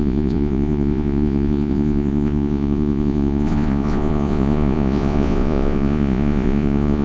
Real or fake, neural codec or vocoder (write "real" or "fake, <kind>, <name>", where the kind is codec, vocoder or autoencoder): fake, vocoder, Vocos